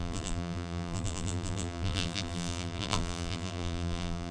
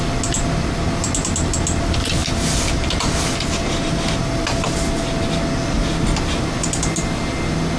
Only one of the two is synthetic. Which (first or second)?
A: first